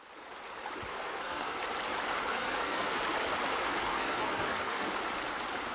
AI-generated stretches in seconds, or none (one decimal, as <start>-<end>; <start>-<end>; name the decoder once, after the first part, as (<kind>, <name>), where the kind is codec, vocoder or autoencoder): 0.9-1.6 (codec, SNAC); 2.3-3.0; 3.8-4.9